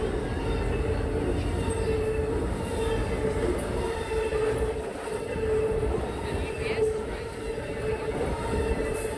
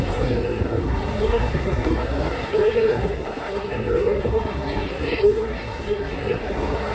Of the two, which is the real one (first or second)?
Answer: first